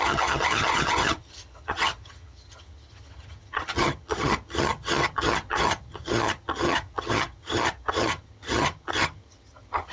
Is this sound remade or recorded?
remade